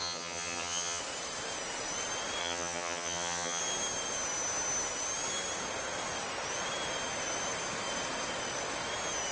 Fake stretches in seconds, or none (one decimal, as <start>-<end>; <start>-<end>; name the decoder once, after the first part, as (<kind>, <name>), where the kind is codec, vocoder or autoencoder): 0.0-1.0 (vocoder, HiFi-GAN); 2.4-3.6